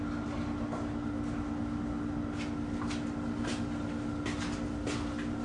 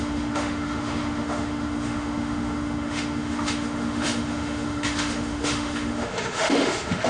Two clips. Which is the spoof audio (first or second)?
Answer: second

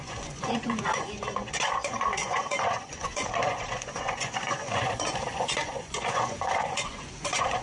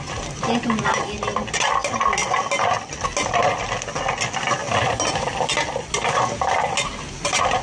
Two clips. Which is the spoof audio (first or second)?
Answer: first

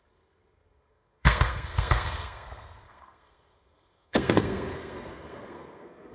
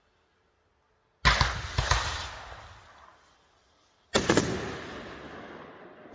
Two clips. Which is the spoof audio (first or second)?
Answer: first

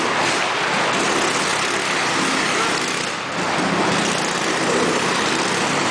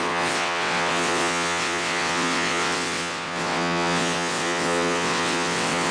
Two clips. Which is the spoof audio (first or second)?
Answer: second